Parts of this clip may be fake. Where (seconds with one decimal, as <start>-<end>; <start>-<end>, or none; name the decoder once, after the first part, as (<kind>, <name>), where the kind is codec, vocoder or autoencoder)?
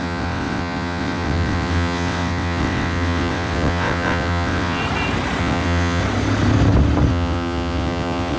0.0-4.8 (vocoder, WaveNeXt); 5.4-6.0; 7.1-8.4